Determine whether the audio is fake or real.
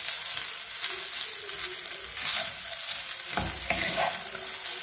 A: real